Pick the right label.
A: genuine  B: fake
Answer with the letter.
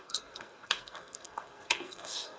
B